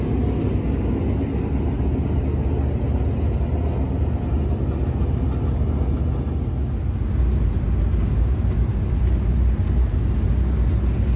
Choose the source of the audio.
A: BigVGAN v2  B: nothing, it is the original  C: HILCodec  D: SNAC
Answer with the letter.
B